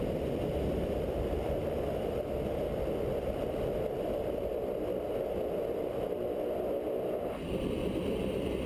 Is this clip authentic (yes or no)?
yes